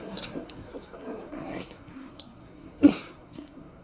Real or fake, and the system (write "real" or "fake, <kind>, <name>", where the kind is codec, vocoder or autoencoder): fake, codec, SNAC